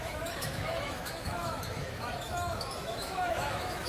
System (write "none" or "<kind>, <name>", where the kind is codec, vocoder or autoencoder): autoencoder, DAC-VAE